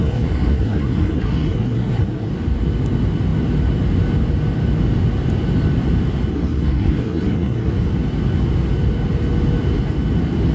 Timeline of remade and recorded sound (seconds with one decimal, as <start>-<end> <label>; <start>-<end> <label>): 0.0-2.3 remade; 2.3-6.3 recorded; 6.3-7.7 remade; 7.7-10.5 recorded